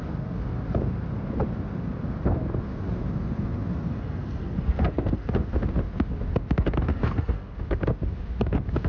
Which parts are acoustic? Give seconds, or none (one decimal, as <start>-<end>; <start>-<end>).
0.0-3.9; 5.3-6.9; 7.5-8.9